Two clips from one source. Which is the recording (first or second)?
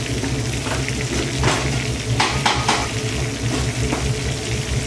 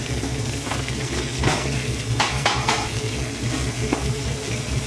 first